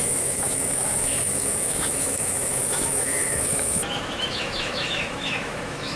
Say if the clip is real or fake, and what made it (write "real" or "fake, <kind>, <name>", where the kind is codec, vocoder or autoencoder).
fake, autoencoder, DAC-VAE